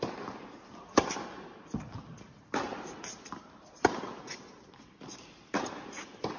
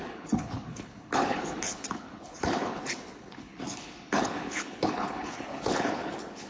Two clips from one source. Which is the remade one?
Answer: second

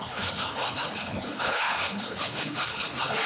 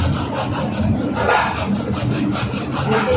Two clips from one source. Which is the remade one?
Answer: first